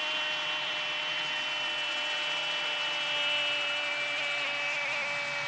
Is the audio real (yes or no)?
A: yes